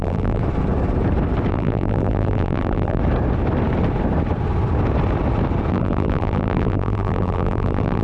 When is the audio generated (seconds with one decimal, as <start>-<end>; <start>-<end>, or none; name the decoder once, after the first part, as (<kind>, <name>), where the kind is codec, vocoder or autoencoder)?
0.0-0.4 (vocoder, BigVGAN v2); 1.5-3.0; 5.7-8.0